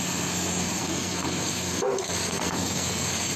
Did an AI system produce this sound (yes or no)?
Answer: yes